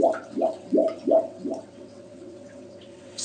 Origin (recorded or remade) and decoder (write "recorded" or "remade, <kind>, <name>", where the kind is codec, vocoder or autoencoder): remade, vocoder, WaveNeXt